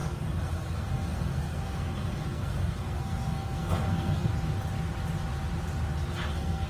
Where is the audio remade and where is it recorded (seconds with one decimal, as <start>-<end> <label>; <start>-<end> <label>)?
0.0-4.3 remade; 4.3-6.3 recorded; 6.3-6.7 remade

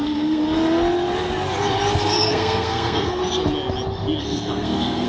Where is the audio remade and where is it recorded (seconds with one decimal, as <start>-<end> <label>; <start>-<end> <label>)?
0.0-0.4 remade; 0.4-2.3 recorded; 2.3-3.2 remade; 3.2-4.2 recorded; 4.2-5.1 remade